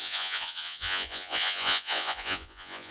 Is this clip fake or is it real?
fake